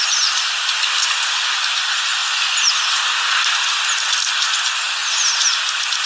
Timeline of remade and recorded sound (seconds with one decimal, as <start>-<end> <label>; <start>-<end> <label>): 0.0-6.1 recorded